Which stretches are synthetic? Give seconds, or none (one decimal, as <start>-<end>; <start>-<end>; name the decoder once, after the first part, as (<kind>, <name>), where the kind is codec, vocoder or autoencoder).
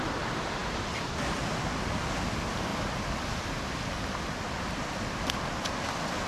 none